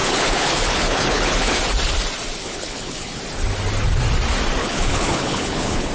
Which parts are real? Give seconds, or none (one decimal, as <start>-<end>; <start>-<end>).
1.6-2.4; 3.2-4.6